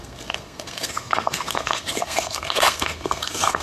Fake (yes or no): yes